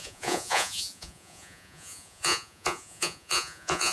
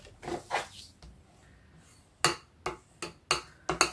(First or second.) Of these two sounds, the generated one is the first